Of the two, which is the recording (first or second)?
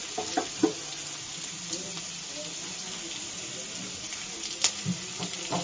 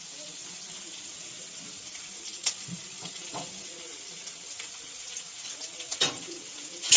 first